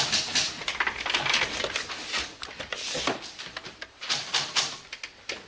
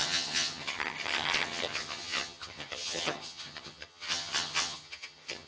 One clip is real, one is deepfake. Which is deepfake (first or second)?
second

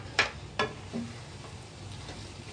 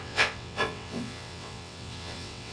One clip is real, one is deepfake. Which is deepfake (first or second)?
second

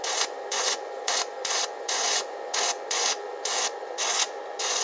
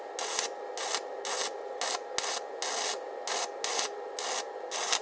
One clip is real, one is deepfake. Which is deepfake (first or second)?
first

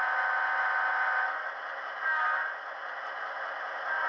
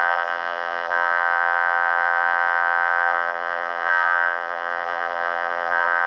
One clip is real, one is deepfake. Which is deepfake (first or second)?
second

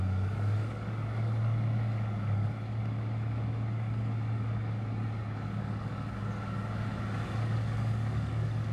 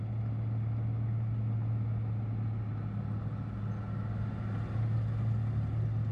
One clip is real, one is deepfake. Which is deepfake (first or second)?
first